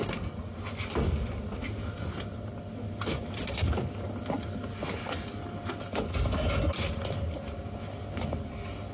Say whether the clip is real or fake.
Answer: real